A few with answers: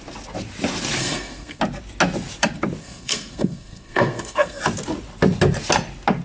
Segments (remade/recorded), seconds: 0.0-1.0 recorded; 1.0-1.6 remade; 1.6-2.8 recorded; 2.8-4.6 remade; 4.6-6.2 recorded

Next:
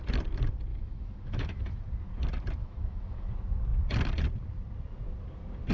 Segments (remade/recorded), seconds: 0.0-0.7 recorded; 0.7-1.8 remade; 1.8-2.6 recorded; 2.6-3.3 remade; 3.3-5.7 recorded

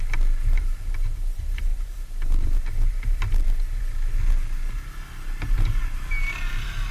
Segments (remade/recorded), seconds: 0.0-6.9 recorded

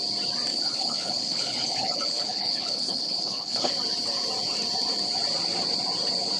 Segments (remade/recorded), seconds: 0.0-0.5 recorded; 0.5-3.7 remade; 3.7-6.4 recorded